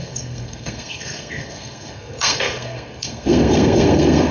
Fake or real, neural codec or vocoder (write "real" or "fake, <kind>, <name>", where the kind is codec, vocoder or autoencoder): fake, codec, SNAC